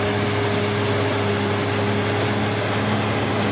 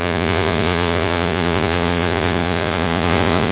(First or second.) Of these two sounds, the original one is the first